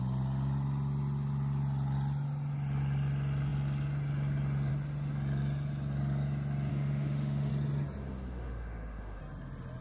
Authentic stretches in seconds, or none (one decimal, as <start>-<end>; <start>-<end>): 0.0-6.7; 7.5-8.0; 9.2-9.8